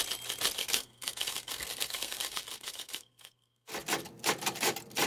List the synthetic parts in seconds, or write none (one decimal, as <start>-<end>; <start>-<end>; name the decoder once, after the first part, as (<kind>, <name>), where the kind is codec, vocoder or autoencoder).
0.6-3.7 (codec, SNAC)